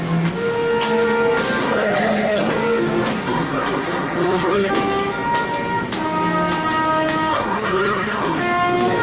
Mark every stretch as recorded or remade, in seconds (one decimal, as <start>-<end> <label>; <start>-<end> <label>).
0.0-1.6 recorded; 1.6-2.5 remade; 2.5-3.1 recorded; 3.1-4.7 remade; 4.7-7.3 recorded; 7.3-8.4 remade; 8.4-9.0 recorded